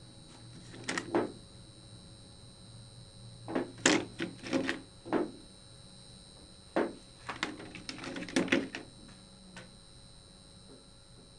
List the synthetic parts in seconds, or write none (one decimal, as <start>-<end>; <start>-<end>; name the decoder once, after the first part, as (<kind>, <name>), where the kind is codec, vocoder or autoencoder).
none